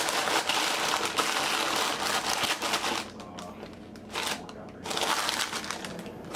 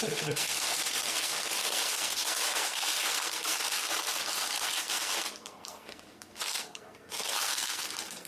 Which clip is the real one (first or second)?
first